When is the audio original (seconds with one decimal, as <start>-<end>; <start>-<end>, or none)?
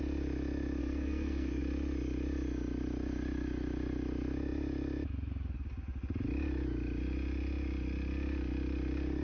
0.0-0.8; 1.6-9.2